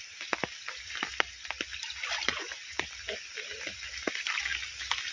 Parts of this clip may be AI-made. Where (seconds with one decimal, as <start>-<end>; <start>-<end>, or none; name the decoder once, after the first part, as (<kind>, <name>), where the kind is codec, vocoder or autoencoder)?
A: 2.3-2.9 (vocoder, Vocos)